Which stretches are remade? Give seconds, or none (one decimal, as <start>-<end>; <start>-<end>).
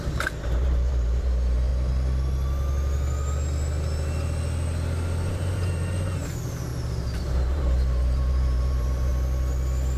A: 0.0-1.7; 5.3-6.7; 7.2-9.1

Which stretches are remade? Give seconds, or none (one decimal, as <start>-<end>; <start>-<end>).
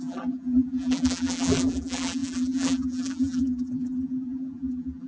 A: 0.0-5.1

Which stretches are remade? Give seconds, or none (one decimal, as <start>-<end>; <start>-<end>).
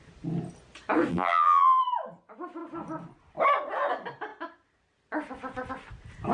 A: 1.1-1.8